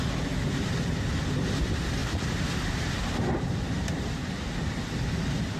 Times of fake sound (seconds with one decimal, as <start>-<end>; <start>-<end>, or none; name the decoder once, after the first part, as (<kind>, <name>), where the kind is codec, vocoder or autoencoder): 2.0-4.1 (vocoder, BigVGAN v2)